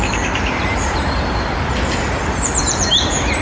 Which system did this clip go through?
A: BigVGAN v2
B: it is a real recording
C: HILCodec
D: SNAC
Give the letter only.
A